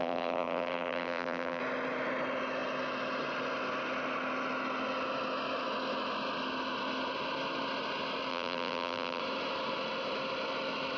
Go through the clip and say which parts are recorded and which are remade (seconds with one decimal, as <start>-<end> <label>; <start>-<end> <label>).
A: 0.0-1.6 remade; 1.6-8.3 recorded; 8.3-9.2 remade; 9.2-11.0 recorded